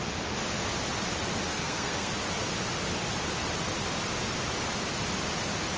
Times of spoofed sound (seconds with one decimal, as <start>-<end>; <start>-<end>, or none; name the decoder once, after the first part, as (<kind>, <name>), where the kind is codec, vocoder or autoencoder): 1.5-2.1 (codec, SNAC)